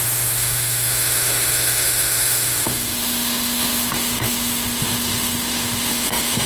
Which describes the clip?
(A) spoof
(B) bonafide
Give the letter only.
A